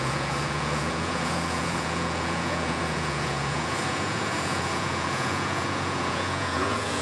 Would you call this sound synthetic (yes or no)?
yes